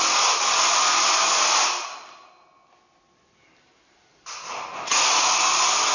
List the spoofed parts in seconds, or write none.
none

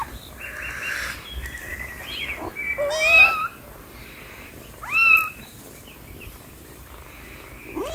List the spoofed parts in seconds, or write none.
3.5-6.9 (vocoder, BigVGAN v2)

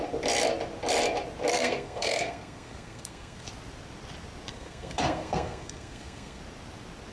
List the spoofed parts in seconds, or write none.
1.5-3.5 (codec, SNAC); 4.5-6.4

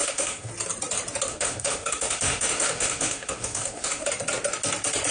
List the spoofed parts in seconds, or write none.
0.0-0.5 (autoencoder, DAC-VAE); 1.3-4.1